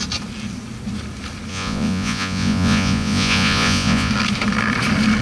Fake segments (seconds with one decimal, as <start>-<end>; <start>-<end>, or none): 1.5-4.1